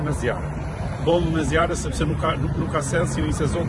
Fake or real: fake